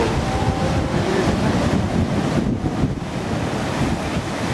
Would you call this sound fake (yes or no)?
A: no